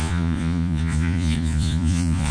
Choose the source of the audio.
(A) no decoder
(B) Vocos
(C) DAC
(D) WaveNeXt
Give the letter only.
B